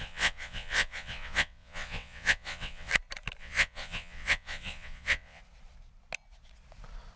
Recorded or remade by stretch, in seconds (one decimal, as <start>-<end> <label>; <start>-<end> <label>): 0.0-2.9 remade; 2.9-3.4 recorded; 3.4-5.4 remade; 5.4-7.2 recorded